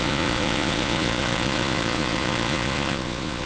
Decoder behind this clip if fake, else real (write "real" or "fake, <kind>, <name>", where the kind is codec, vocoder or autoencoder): fake, vocoder, Vocos